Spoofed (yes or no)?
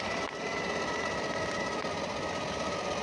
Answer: no